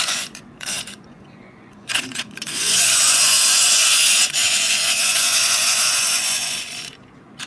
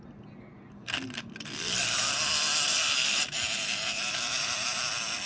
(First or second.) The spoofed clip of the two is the first